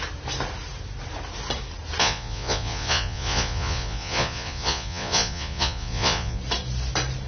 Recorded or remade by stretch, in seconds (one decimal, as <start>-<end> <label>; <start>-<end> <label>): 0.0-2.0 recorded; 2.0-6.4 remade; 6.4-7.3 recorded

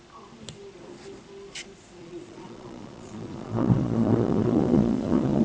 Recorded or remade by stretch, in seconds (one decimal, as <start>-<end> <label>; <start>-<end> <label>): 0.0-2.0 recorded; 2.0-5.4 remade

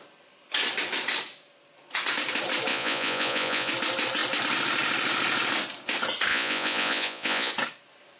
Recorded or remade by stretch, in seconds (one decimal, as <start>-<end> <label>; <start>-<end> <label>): 0.0-2.7 recorded; 2.7-3.7 remade; 3.7-6.3 recorded; 6.3-7.5 remade; 7.5-8.2 recorded